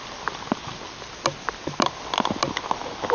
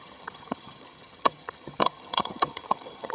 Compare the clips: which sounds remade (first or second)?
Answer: second